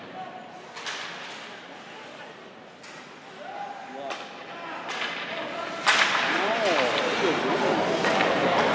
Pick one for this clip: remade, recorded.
recorded